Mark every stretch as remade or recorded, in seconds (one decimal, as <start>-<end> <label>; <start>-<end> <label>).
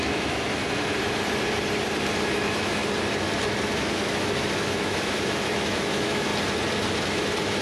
0.0-0.6 remade; 0.6-2.2 recorded; 2.2-2.8 remade; 2.8-3.8 recorded; 3.8-6.3 remade; 6.3-7.1 recorded; 7.1-7.6 remade